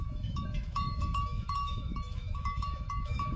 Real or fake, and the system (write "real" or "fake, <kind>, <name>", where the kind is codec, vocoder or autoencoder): fake, autoencoder, DAC-VAE